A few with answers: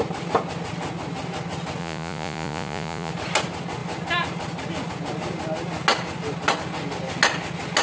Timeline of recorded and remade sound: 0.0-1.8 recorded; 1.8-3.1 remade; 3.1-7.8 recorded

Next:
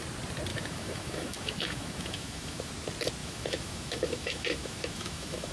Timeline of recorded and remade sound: 0.0-0.5 recorded; 0.5-2.7 remade; 2.7-3.2 recorded; 3.2-5.5 remade

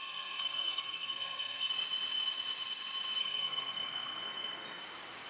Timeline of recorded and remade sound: 0.0-1.7 remade; 1.7-3.2 recorded; 3.2-4.8 remade; 4.8-5.3 recorded

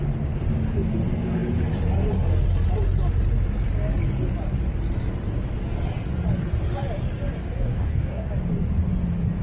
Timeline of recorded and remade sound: 0.0-7.4 recorded; 7.4-8.3 remade; 8.3-9.4 recorded